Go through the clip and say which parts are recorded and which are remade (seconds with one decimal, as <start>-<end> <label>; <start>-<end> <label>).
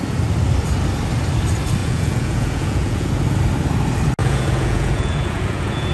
0.0-1.8 recorded; 1.8-3.1 remade; 3.1-4.2 recorded; 4.2-5.9 remade